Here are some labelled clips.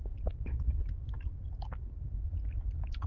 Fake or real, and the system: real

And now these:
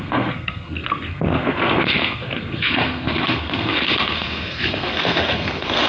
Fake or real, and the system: fake, codec, SNAC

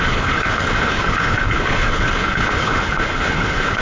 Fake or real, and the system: fake, codec, HILCodec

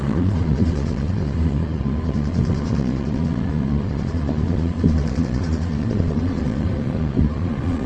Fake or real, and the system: fake, vocoder, Vocos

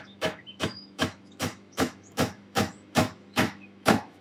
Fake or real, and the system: fake, autoencoder, DAC-VAE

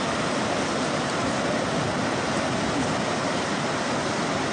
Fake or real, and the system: real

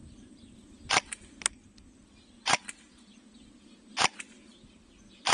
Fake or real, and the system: real